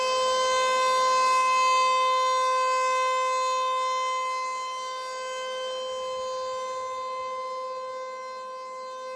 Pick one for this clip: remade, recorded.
recorded